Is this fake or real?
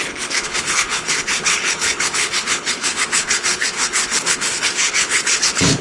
fake